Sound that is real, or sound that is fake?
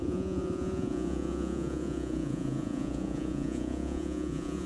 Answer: fake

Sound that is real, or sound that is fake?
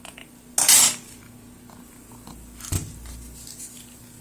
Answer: real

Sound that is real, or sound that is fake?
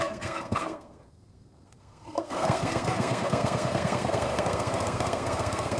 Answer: fake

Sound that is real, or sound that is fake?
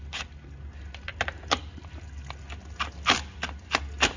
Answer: real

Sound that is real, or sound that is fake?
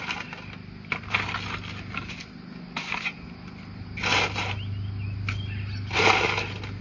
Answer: real